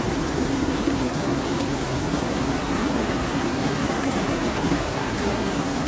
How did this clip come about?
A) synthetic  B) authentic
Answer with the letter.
A